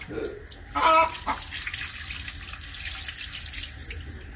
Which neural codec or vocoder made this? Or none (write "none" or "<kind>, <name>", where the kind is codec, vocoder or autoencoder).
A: none